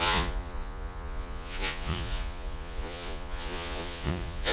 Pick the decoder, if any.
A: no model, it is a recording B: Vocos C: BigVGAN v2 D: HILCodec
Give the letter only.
B